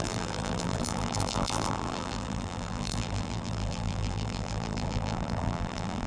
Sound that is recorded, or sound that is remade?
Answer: remade